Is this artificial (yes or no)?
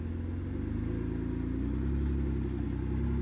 no